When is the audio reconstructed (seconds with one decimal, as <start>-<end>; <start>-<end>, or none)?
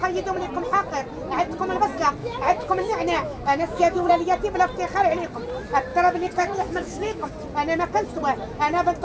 2.2-4.1; 5.9-7.3